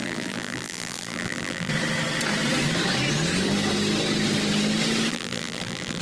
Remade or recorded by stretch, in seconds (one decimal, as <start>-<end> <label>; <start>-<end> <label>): 0.0-1.7 remade; 1.7-5.1 recorded; 5.1-6.0 remade